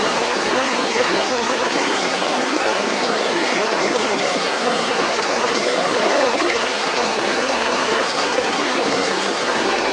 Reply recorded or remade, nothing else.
remade